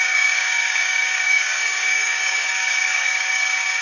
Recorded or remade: remade